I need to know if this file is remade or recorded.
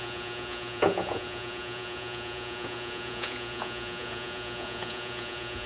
remade